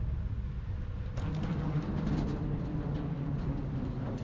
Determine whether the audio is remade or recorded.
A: recorded